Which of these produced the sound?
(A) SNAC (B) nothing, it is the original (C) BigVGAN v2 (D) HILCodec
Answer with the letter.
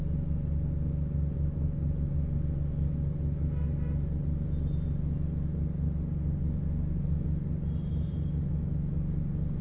B